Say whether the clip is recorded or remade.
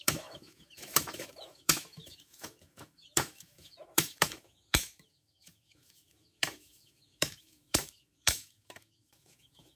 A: remade